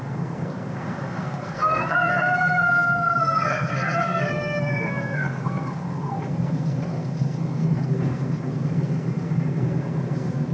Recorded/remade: remade